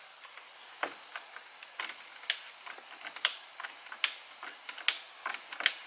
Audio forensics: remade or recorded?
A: recorded